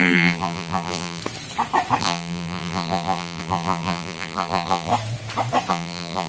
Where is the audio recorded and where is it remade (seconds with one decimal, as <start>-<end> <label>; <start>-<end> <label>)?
0.0-1.2 remade; 1.2-2.0 recorded; 2.0-4.9 remade; 4.9-5.7 recorded; 5.7-6.3 remade

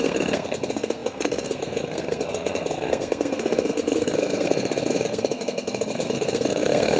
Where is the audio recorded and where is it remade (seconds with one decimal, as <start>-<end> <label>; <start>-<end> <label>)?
0.0-7.0 remade

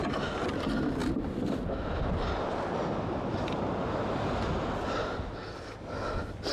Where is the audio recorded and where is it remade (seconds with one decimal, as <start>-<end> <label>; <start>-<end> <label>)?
0.0-6.5 recorded

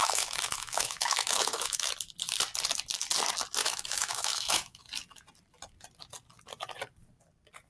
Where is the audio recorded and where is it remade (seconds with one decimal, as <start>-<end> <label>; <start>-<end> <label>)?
0.0-1.9 remade; 1.9-3.6 recorded; 3.6-4.8 remade; 4.8-7.7 recorded

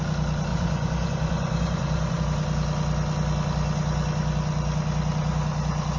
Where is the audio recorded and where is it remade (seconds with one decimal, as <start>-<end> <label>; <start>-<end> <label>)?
0.0-0.5 recorded; 0.5-2.2 remade; 2.2-6.0 recorded

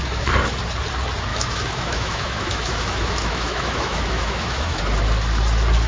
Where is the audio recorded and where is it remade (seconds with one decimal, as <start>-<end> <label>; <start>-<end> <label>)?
0.0-1.3 recorded; 1.3-4.8 remade; 4.8-5.9 recorded